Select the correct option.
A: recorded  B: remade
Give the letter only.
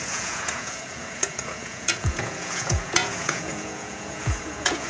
B